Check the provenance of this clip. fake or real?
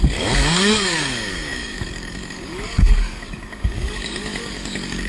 fake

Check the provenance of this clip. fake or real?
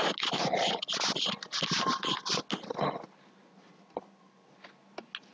real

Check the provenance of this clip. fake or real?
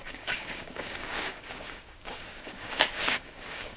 fake